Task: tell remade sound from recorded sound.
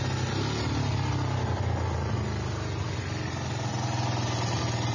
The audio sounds recorded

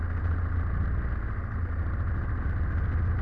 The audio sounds recorded